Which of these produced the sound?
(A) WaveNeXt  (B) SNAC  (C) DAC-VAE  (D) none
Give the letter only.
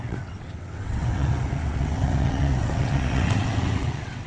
A